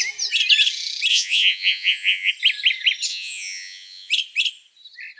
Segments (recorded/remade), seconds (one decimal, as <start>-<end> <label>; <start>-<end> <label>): 0.0-1.1 recorded; 1.1-2.3 remade; 2.3-3.1 recorded; 3.1-4.1 remade; 4.1-5.2 recorded